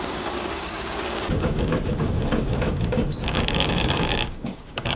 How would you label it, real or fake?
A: fake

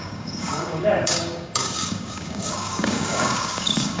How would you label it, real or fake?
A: fake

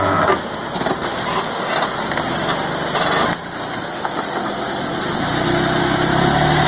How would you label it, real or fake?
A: real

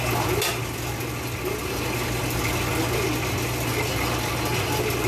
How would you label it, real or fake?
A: real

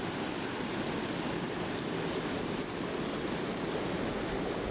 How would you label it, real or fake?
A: real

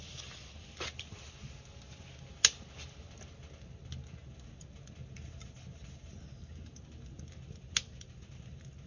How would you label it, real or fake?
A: real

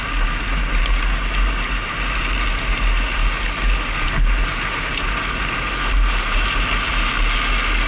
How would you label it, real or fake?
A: real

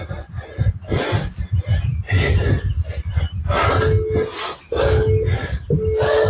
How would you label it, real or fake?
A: real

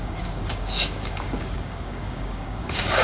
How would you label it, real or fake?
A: fake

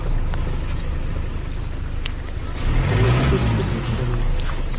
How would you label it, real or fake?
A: real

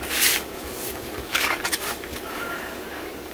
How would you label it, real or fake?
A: fake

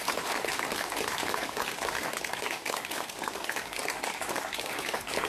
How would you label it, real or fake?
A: fake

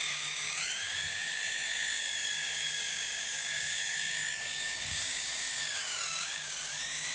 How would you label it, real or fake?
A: fake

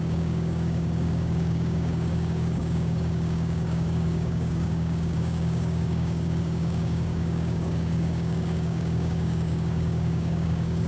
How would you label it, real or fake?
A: fake